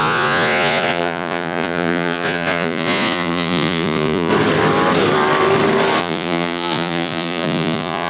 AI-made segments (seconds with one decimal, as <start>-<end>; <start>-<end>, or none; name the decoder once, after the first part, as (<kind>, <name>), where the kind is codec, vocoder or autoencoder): 0.0-4.3 (vocoder, Vocos); 6.0-8.1